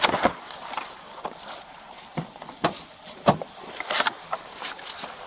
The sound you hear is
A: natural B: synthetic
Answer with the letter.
B